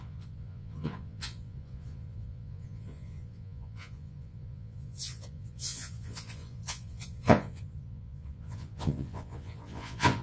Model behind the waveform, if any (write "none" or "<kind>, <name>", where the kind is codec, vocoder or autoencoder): vocoder, Vocos